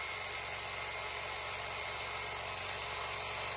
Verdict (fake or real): real